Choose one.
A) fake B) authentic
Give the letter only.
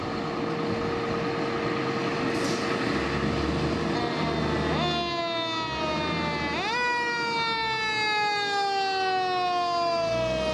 B